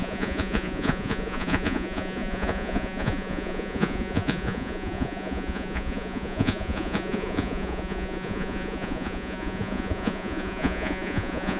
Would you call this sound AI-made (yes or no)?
yes